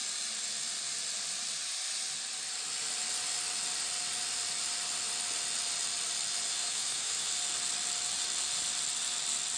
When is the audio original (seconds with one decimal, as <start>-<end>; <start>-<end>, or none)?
0.0-6.6; 7.3-9.6